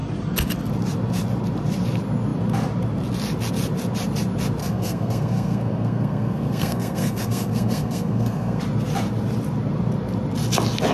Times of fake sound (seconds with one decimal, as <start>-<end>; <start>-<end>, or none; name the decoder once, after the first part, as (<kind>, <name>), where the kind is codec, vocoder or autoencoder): 4.6-8.6 (codec, SNAC)